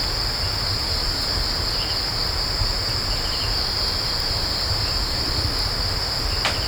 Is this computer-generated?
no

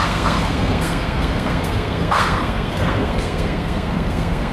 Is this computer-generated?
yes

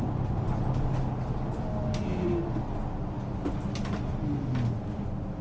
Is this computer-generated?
no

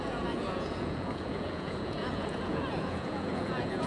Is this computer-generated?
yes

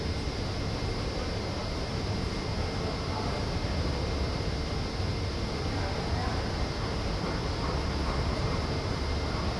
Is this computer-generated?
no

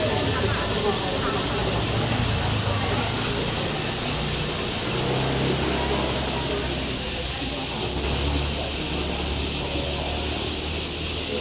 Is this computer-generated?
no